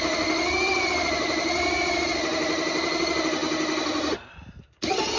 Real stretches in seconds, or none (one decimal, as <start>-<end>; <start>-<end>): 0.0-0.7; 3.0-5.2